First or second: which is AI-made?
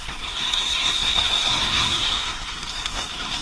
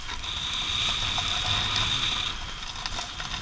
first